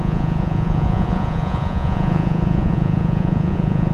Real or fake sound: fake